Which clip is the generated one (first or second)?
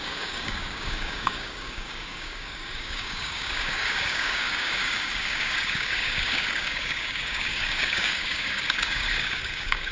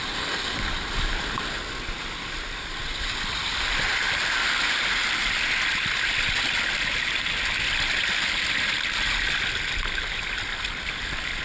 first